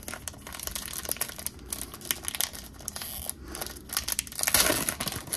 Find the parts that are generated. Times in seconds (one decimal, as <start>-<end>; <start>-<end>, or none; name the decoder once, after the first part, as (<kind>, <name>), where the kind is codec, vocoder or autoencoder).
none

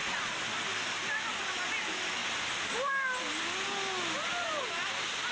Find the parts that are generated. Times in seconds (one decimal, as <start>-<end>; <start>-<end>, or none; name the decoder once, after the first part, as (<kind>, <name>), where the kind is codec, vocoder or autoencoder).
2.2-3.3 (vocoder, BigVGAN v2)

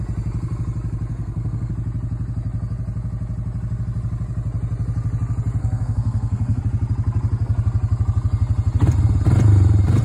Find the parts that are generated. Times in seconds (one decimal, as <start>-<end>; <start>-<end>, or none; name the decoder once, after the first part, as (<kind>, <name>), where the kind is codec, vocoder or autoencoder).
1.1-1.7 (codec, SNAC); 5.6-6.6

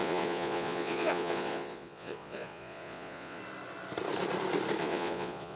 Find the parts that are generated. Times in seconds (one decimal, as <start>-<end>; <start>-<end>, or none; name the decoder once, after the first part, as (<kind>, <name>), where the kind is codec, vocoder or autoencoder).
0.0-3.4 (vocoder, Vocos); 4.8-5.6

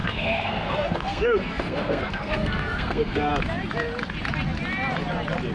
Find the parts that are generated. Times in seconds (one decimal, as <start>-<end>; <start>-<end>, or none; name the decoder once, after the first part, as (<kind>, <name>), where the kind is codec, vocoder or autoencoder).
0.0-3.3 (codec, SNAC)

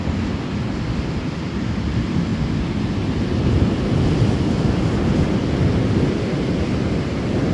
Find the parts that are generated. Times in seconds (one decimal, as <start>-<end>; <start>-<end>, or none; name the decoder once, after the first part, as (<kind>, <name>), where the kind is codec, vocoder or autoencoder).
none